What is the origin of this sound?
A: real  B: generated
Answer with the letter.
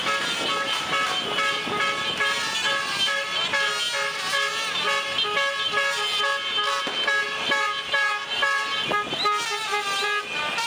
A